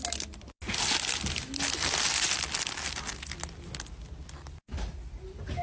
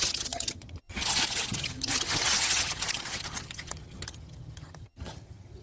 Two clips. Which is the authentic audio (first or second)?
first